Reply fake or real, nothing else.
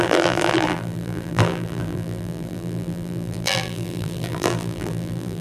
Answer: fake